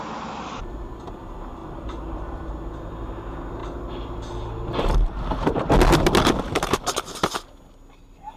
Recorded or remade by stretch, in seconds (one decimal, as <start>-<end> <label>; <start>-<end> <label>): 0.0-1.6 recorded; 1.6-2.5 remade; 2.5-8.4 recorded